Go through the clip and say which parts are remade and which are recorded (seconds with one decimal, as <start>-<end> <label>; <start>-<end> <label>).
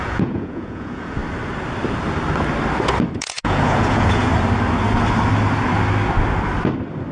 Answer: 0.0-1.2 remade; 1.2-3.2 recorded; 3.2-4.3 remade; 4.3-7.1 recorded